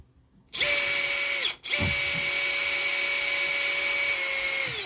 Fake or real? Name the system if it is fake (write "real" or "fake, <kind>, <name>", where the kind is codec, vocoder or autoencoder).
real